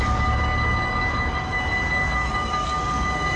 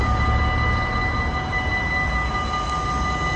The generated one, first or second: first